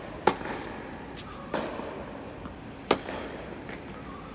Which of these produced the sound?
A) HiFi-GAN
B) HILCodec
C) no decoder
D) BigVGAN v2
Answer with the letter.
C